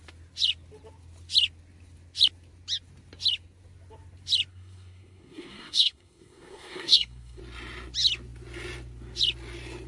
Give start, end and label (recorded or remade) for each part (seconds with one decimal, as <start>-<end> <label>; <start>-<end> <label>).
0.0-4.5 recorded; 4.5-7.4 remade; 7.4-9.9 recorded